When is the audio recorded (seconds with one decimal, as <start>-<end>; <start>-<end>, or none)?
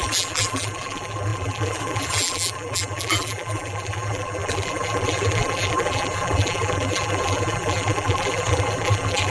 none